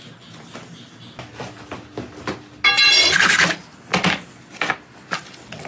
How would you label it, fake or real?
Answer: real